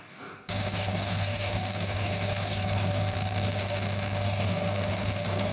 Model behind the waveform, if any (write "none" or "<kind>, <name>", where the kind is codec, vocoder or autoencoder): codec, DAC